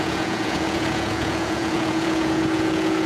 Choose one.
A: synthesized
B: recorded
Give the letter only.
A